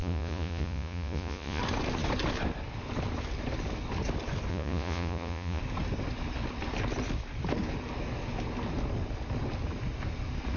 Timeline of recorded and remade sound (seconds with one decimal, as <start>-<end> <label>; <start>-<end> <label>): 0.0-1.6 remade; 1.6-4.5 recorded; 4.5-5.6 remade; 5.6-10.6 recorded